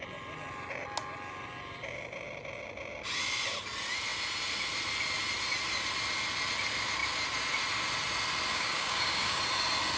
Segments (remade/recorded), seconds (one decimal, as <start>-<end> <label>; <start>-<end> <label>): 0.0-8.5 recorded; 8.5-9.4 remade; 9.4-10.0 recorded